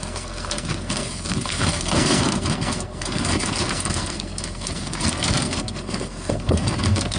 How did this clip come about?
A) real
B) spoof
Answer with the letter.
B